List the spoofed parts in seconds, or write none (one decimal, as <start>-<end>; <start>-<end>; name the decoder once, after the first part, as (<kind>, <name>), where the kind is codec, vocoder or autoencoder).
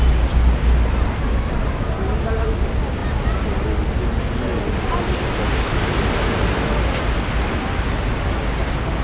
none